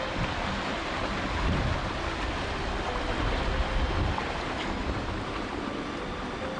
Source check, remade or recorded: recorded